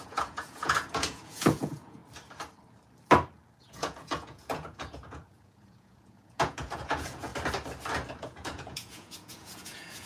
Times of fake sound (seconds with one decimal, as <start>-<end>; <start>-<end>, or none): 0.0-2.0; 3.6-7.3; 8.2-10.1